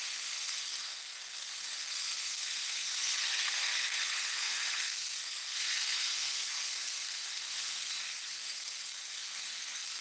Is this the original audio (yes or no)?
no